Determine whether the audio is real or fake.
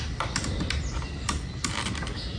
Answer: real